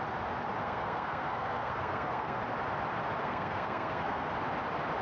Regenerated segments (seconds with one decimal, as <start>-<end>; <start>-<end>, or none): 0.6-2.4; 3.2-4.3